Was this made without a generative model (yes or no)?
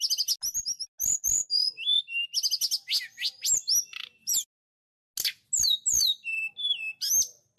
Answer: yes